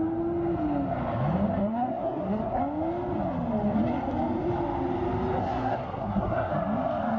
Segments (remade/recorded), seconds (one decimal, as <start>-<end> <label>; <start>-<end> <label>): 0.0-1.6 recorded; 1.6-2.6 remade; 2.6-5.4 recorded; 5.4-6.5 remade; 6.5-7.2 recorded